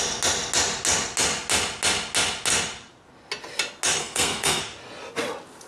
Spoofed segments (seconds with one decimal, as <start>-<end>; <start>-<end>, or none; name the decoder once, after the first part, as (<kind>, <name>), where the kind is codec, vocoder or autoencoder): 4.0-4.6 (codec, SNAC)